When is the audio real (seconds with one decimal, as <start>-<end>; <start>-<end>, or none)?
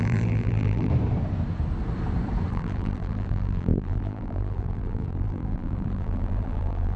0.9-2.5